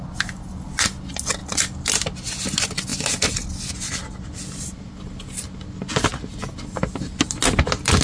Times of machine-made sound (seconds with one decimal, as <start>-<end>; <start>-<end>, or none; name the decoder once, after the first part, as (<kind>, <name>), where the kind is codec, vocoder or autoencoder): none